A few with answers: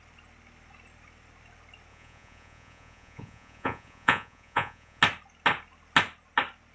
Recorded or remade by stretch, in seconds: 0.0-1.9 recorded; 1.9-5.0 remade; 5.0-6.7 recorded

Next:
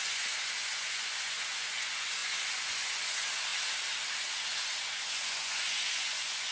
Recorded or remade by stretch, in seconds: 0.0-3.5 remade; 3.5-4.2 recorded; 4.2-6.5 remade

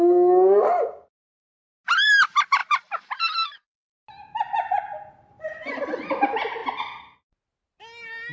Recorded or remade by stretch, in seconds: 0.0-8.3 recorded

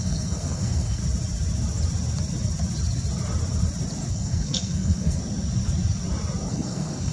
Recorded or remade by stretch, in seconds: 0.0-1.0 remade; 1.0-4.1 recorded; 4.1-5.2 remade; 5.2-6.5 recorded; 6.5-7.1 remade

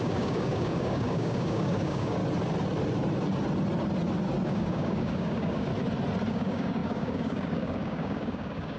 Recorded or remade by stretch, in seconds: 0.0-2.2 remade; 2.2-4.5 recorded; 4.5-5.7 remade; 5.7-6.3 recorded; 6.3-8.8 remade